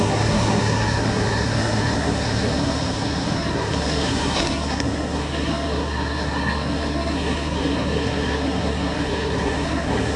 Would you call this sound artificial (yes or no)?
yes